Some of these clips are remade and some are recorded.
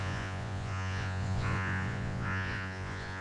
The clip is remade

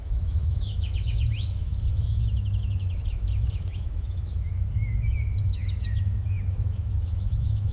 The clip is remade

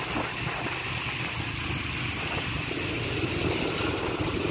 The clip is recorded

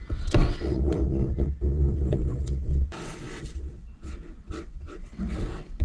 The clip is remade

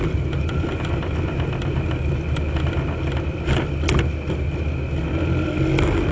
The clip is recorded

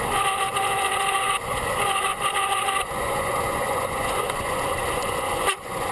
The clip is remade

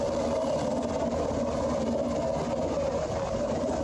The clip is remade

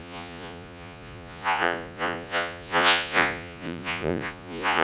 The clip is remade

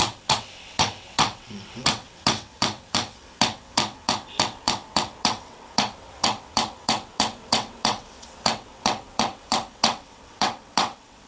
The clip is remade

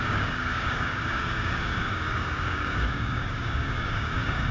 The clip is remade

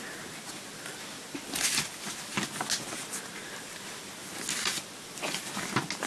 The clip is recorded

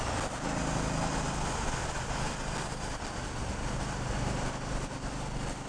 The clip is recorded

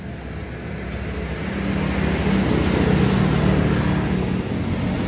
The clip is recorded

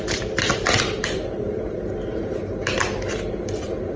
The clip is recorded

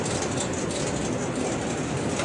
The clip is recorded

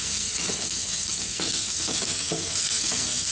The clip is remade